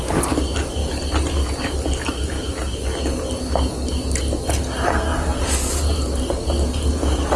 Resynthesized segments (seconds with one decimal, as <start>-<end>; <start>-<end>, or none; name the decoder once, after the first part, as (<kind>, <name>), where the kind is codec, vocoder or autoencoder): 4.9-5.4 (codec, SNAC)